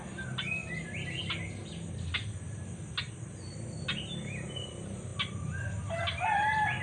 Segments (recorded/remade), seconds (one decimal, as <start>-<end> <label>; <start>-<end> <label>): 0.0-6.8 recorded